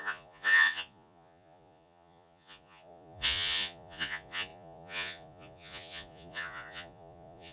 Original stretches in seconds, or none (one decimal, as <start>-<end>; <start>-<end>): none